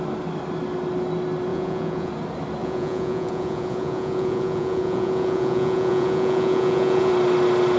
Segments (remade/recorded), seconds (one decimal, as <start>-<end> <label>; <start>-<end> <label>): 0.0-1.5 recorded; 1.5-2.1 remade; 2.1-2.6 recorded; 2.6-7.1 remade; 7.1-7.8 recorded

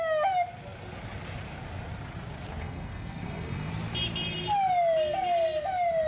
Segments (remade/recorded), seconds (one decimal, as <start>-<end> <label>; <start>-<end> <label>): 0.0-2.6 recorded; 2.6-3.7 remade; 3.7-6.1 recorded

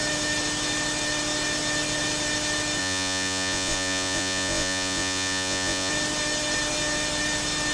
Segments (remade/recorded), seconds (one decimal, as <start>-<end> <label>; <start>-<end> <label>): 0.0-2.8 recorded; 2.8-5.9 remade; 5.9-7.7 recorded

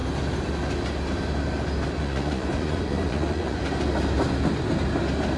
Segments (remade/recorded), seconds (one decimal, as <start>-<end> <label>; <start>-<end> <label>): 0.0-2.0 recorded; 2.0-3.6 remade; 3.6-5.4 recorded